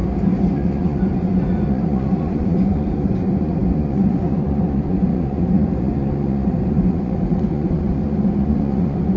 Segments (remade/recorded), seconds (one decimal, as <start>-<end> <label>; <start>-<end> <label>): 0.0-0.5 recorded; 0.5-9.2 remade